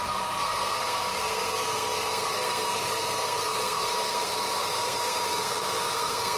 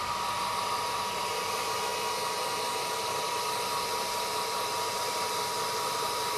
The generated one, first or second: first